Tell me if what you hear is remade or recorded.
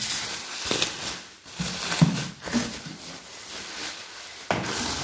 recorded